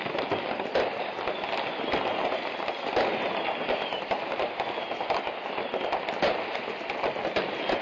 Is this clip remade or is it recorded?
recorded